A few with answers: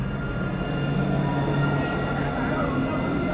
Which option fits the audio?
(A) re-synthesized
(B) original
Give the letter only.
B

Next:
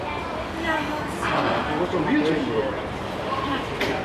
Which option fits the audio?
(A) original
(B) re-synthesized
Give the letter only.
A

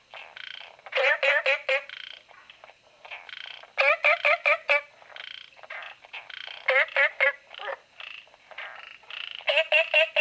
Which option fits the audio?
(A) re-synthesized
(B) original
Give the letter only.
B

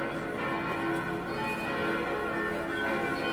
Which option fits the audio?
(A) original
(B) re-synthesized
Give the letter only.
A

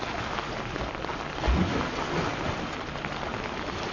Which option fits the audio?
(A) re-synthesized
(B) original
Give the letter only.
B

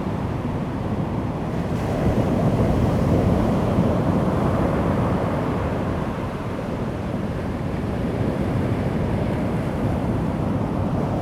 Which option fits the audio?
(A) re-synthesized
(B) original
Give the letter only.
A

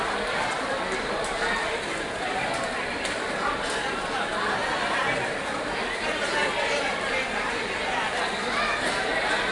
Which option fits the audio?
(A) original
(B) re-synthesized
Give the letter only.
B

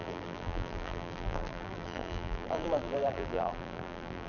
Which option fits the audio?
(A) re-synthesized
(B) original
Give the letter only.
A